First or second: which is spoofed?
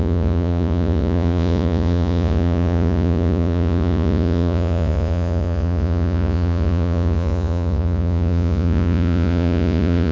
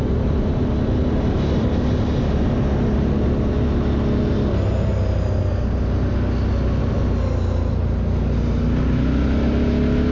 first